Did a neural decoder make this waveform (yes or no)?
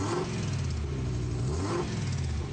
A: no